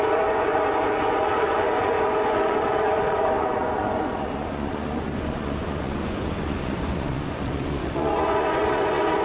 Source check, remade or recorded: remade